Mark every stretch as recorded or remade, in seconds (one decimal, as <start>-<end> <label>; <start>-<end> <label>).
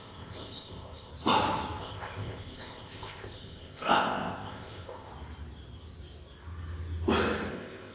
0.0-1.1 remade; 1.1-1.8 recorded; 1.8-5.1 remade; 5.1-7.5 recorded; 7.5-7.9 remade